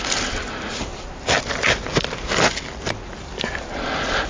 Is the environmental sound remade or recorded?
recorded